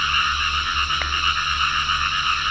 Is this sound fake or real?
real